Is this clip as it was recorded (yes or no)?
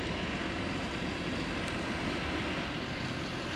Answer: yes